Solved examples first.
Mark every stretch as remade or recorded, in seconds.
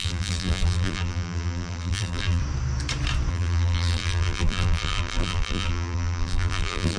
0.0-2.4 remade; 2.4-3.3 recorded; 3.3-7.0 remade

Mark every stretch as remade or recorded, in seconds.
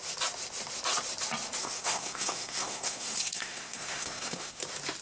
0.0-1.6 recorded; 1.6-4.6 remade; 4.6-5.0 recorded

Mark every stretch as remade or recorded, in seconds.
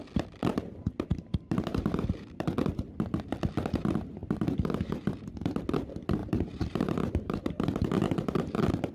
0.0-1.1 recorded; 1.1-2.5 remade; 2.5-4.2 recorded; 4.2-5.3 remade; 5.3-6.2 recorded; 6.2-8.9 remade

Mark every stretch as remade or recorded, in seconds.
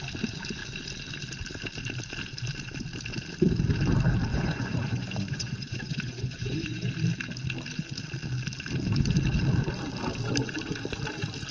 0.0-4.3 recorded; 4.3-6.9 remade; 6.9-11.5 recorded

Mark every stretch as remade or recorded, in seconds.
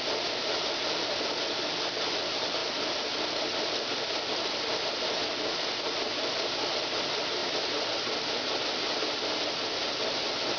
0.0-2.6 recorded; 2.6-4.3 remade; 4.3-10.6 recorded